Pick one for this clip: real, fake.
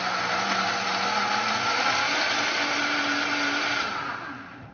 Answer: real